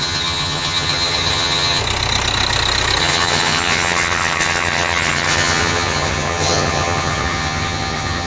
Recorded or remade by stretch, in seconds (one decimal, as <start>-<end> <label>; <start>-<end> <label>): 0.0-1.8 remade; 1.8-3.0 recorded; 3.0-8.3 remade